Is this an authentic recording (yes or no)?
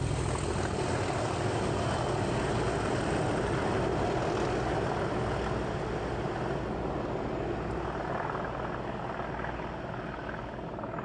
yes